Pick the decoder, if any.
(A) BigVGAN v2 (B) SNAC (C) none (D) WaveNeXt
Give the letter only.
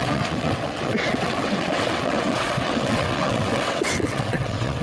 D